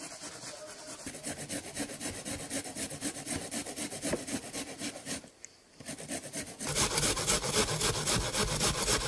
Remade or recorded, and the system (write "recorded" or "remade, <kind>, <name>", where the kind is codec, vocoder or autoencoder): recorded